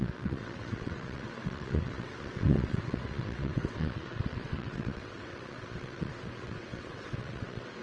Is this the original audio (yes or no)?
no